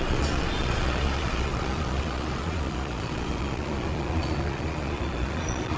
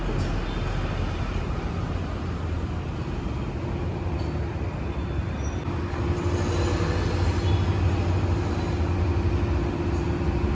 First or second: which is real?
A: second